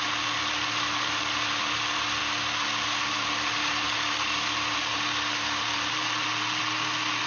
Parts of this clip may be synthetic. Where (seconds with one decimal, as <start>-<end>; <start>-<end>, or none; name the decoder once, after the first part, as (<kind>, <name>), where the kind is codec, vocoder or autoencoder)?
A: none